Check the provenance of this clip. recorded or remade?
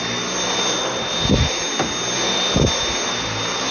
recorded